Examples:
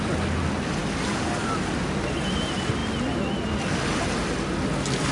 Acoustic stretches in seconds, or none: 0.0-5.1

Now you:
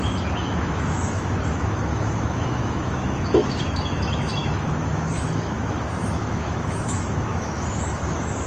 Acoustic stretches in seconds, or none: none

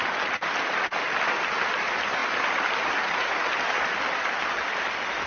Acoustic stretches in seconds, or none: 0.0-5.3

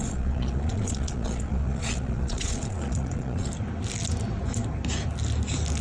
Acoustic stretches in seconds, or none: 3.5-5.8

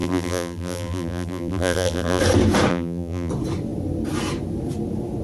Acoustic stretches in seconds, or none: 2.2-2.7; 3.3-5.2

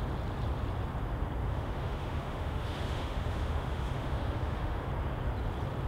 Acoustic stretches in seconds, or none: 0.0-1.4; 4.9-5.9

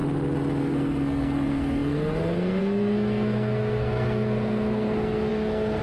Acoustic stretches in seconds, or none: 0.0-0.6